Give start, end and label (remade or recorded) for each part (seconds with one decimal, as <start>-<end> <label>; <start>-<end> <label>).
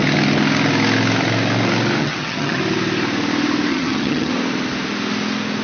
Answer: 0.0-2.0 recorded; 2.0-2.6 remade; 2.6-3.7 recorded; 3.7-4.3 remade; 4.3-5.6 recorded